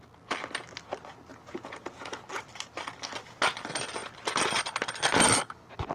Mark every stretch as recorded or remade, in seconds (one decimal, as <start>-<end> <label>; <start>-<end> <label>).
0.0-1.3 recorded; 1.3-2.3 remade; 2.3-5.9 recorded